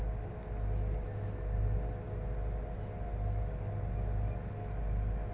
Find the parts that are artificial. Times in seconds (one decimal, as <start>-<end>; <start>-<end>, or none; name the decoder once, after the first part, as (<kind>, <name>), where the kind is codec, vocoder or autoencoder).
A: none